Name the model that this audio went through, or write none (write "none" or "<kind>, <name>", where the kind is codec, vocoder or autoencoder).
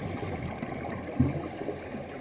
none